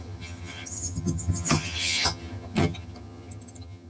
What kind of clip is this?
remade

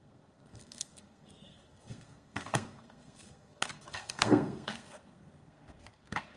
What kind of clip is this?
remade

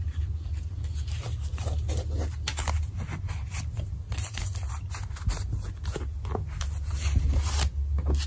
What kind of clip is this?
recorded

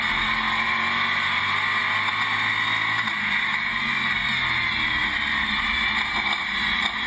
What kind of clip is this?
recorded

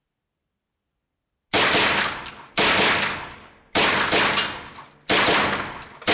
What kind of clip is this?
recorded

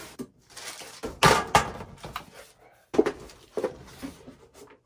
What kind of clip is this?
recorded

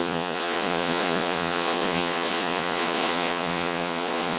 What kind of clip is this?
remade